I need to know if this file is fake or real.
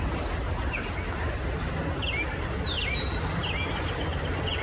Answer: real